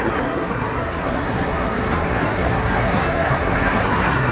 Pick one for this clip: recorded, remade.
remade